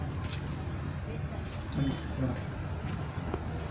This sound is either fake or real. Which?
real